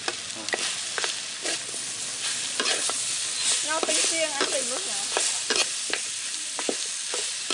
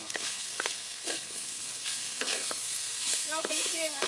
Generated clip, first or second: second